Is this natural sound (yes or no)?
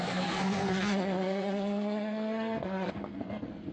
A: no